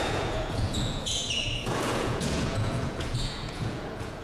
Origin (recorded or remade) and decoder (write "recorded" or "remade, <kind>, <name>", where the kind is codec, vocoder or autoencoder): remade, vocoder, Vocos